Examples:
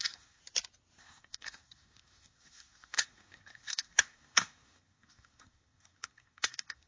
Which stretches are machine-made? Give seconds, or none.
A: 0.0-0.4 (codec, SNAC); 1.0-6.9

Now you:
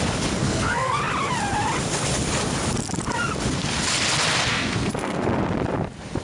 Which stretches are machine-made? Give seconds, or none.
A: 0.4-1.0 (codec, SNAC); 4.5-5.2

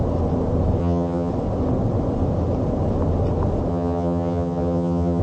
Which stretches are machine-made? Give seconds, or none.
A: 0.8-1.3 (vocoder, HiFi-GAN); 3.7-5.2

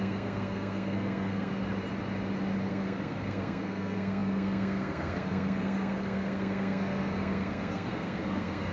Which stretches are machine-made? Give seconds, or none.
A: 0.0-1.5 (codec, SNAC); 2.7-8.7